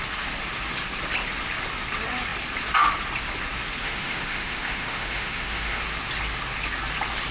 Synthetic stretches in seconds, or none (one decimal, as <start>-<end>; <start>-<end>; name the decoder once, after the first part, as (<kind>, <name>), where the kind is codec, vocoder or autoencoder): 3.8-5.8 (autoencoder, DAC-VAE)